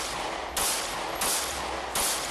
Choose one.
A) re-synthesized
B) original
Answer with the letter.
B